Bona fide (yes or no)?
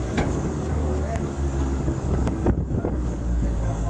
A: no